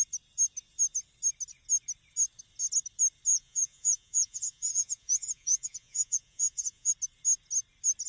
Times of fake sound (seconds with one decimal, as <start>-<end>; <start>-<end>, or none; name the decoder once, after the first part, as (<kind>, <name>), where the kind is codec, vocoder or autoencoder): 3.3-6.9 (vocoder, Vocos)

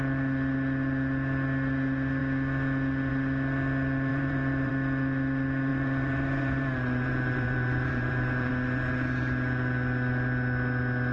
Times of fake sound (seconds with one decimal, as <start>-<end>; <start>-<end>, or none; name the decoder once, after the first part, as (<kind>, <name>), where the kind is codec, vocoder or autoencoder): 4.1-4.7 (vocoder, BigVGAN v2); 5.7-8.5

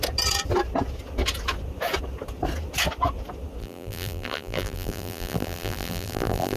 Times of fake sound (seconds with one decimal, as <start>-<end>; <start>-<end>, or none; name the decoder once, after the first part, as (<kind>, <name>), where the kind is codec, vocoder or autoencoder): 3.6-6.6 (vocoder, BigVGAN v2)

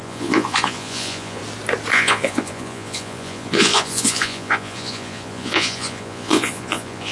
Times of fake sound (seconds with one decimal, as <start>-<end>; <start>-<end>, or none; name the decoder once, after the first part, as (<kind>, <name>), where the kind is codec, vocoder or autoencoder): 0.0-1.4 (vocoder, Vocos); 1.9-7.1

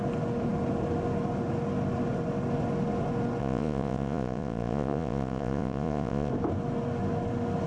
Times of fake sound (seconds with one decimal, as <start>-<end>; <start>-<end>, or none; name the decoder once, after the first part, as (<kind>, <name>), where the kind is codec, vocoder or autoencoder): 3.4-6.3 (vocoder, Vocos)

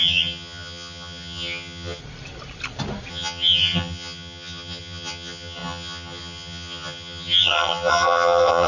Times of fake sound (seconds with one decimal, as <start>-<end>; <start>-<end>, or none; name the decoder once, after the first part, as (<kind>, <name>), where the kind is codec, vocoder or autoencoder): 0.0-2.0 (vocoder, HiFi-GAN); 3.1-8.7

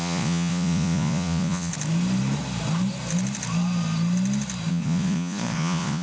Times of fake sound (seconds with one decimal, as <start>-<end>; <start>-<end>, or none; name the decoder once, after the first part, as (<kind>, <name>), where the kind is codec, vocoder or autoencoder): 0.0-1.7 (vocoder, Vocos); 4.7-6.0

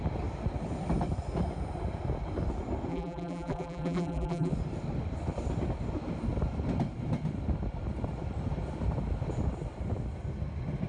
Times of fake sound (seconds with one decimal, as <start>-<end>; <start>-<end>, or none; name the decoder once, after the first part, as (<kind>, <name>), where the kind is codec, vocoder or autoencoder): 2.9-4.5 (vocoder, BigVGAN v2)